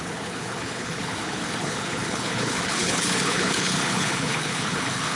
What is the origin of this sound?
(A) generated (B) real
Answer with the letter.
A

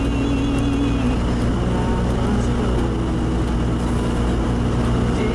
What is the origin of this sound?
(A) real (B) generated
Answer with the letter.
A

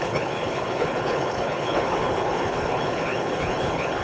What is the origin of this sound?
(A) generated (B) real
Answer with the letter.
A